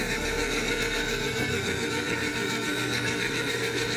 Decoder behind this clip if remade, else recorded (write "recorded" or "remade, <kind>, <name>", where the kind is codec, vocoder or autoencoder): remade, codec, SNAC